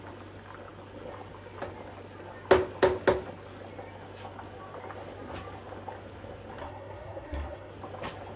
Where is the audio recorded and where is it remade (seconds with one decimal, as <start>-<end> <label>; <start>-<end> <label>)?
0.0-6.6 recorded; 6.6-7.7 remade; 7.7-8.4 recorded

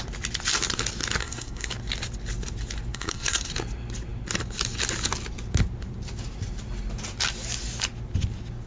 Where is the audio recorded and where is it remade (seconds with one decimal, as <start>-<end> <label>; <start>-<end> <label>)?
0.0-1.2 recorded; 1.2-1.7 remade; 1.7-2.9 recorded; 2.9-3.5 remade; 3.5-8.7 recorded

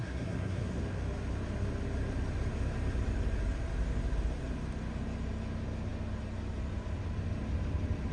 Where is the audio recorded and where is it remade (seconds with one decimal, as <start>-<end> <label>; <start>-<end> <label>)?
0.0-0.8 remade; 0.8-8.1 recorded

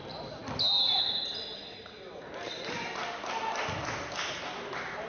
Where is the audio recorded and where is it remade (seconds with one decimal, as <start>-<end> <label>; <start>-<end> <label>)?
0.0-5.1 recorded

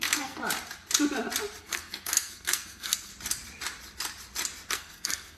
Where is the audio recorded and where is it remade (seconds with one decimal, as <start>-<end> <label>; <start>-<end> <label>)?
0.0-0.4 remade; 0.4-1.6 recorded; 1.6-3.1 remade; 3.1-4.7 recorded; 4.7-5.4 remade

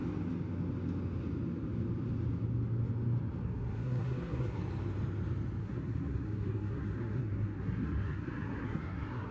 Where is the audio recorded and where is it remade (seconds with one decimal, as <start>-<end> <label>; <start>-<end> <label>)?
0.0-3.4 recorded; 3.4-4.6 remade; 4.6-5.6 recorded; 5.6-9.3 remade

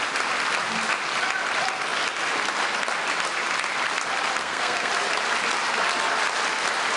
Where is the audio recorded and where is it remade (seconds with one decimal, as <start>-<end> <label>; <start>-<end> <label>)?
0.0-4.4 recorded; 4.4-4.9 remade; 4.9-7.0 recorded

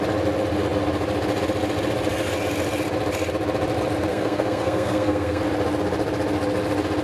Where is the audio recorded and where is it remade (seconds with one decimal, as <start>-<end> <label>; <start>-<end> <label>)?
0.0-4.1 recorded; 4.1-5.4 remade; 5.4-7.0 recorded